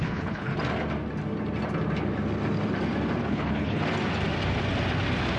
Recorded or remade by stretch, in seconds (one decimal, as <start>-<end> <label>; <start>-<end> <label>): 0.0-0.5 remade; 0.5-3.3 recorded; 3.3-3.8 remade; 3.8-5.4 recorded